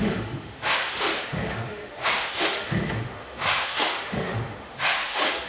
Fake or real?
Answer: fake